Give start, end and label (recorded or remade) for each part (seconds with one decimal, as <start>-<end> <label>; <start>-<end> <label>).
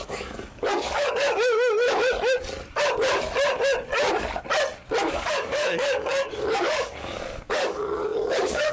0.0-1.2 remade; 1.2-5.0 recorded; 5.0-8.7 remade